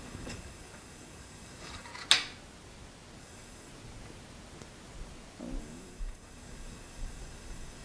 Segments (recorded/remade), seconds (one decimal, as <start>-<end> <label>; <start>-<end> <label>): 0.0-1.9 remade; 1.9-3.2 recorded; 3.2-3.7 remade; 3.7-5.6 recorded; 5.6-7.8 remade